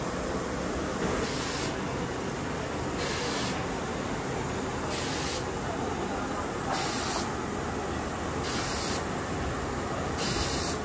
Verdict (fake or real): real